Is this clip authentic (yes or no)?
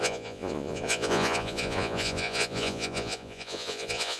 no